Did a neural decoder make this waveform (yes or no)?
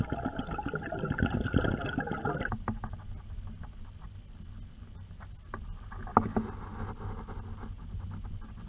no